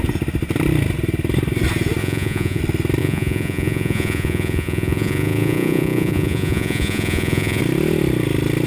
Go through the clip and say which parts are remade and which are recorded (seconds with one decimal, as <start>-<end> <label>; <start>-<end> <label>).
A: 0.0-2.0 recorded; 2.0-2.6 remade; 2.6-3.0 recorded; 3.0-7.6 remade; 7.6-8.7 recorded